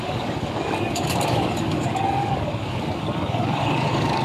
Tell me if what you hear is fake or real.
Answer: fake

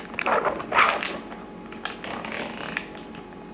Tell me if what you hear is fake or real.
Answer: real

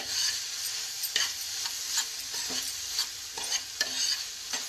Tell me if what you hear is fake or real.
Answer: real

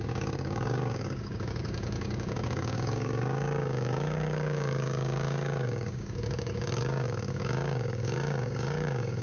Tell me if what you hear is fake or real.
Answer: fake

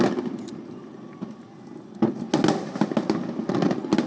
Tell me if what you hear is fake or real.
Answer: real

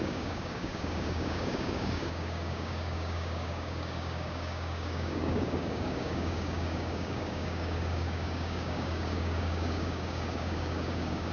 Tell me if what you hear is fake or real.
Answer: fake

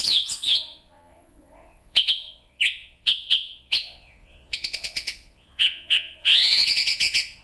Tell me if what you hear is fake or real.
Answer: fake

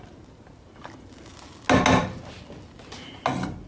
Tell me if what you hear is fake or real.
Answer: real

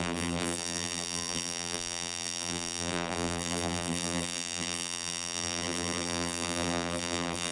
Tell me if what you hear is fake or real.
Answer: fake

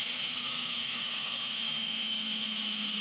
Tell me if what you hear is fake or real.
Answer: fake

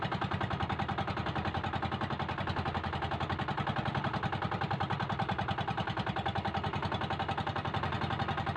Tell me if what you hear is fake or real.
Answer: real